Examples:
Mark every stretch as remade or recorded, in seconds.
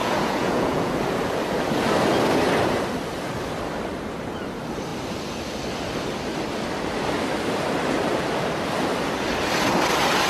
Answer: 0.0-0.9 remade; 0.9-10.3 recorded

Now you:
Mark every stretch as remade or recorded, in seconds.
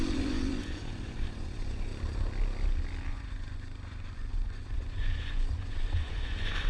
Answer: 0.0-1.9 remade; 1.9-3.1 recorded; 3.1-6.7 remade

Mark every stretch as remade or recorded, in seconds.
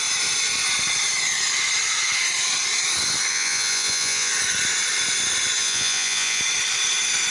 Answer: 0.0-3.3 recorded; 3.3-4.3 remade; 4.3-5.6 recorded; 5.6-6.4 remade; 6.4-7.3 recorded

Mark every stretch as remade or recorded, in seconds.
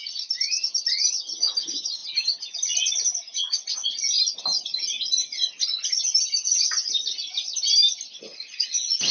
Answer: 0.0-8.3 recorded; 8.3-9.1 remade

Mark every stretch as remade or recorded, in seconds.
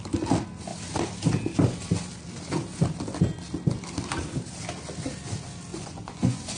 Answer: 0.0-5.7 recorded; 5.7-6.6 remade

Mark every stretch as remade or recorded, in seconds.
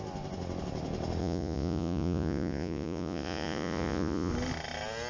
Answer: 0.0-1.2 recorded; 1.2-4.3 remade; 4.3-5.1 recorded